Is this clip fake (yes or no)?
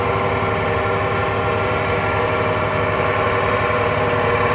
no